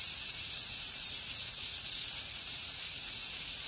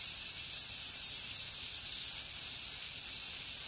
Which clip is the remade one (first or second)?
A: first